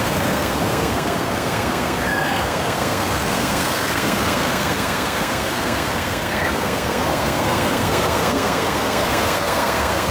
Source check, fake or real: fake